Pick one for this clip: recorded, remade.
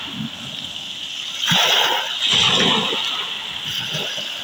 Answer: recorded